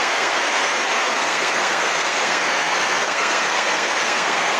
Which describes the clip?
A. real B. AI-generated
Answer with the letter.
B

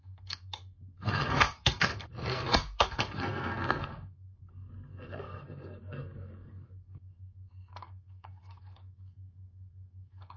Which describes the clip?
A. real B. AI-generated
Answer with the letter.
B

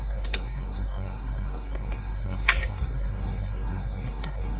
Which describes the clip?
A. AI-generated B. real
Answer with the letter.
A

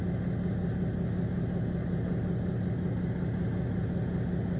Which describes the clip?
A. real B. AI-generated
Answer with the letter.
A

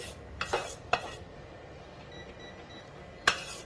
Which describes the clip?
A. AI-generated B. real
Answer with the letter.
B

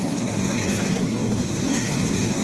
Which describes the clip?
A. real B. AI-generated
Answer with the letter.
B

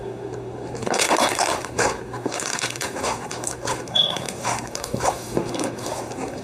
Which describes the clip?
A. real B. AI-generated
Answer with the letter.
B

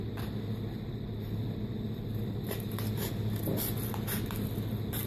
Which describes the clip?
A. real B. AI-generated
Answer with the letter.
A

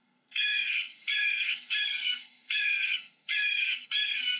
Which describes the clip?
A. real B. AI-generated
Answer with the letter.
B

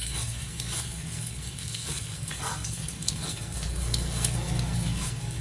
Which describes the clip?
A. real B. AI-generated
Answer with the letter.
B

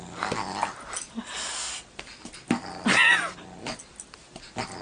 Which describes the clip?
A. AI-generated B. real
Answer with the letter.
B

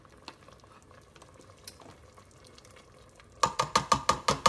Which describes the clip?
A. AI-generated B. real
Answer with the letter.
B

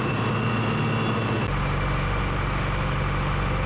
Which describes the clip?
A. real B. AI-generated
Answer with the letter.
A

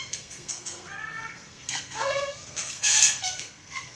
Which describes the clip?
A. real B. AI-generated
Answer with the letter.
B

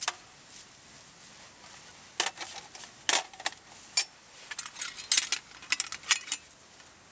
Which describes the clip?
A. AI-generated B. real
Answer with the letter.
B